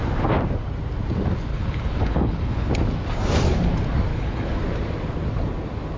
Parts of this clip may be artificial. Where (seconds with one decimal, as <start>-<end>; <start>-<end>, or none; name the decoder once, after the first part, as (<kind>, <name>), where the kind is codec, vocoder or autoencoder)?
1.5-2.7 (codec, HILCodec); 4.1-4.6